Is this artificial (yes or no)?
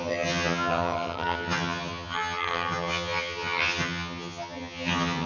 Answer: yes